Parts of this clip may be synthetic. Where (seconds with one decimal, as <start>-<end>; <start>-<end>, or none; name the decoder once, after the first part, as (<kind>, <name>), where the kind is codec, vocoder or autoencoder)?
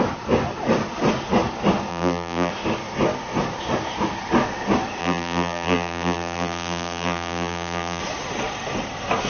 1.9-2.5 (vocoder, BigVGAN v2); 5.0-8.0